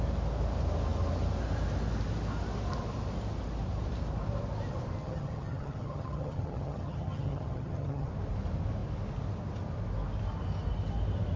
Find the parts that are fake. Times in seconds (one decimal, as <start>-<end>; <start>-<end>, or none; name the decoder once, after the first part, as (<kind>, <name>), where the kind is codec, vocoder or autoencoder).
5.0-8.1 (vocoder, HiFi-GAN)